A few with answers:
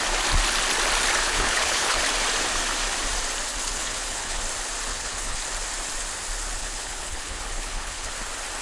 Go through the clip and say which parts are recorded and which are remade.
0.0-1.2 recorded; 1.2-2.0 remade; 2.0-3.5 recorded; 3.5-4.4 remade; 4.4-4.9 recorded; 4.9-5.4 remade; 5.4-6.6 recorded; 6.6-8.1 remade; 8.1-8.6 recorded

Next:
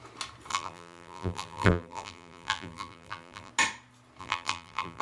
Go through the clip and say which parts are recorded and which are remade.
0.0-0.5 recorded; 0.5-3.5 remade; 3.5-4.2 recorded; 4.2-5.0 remade

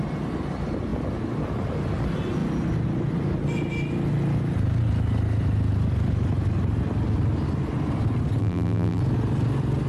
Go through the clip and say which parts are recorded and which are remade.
0.0-8.4 recorded; 8.4-9.0 remade; 9.0-9.9 recorded

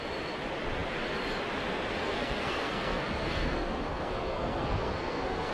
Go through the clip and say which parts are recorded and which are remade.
0.0-2.0 recorded; 2.0-5.5 remade

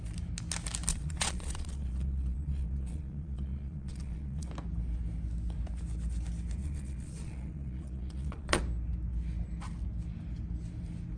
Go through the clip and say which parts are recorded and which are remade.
0.0-0.9 recorded; 0.9-4.5 remade; 4.5-6.6 recorded; 6.6-8.6 remade; 8.6-11.2 recorded